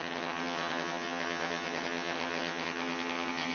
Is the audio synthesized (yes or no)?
yes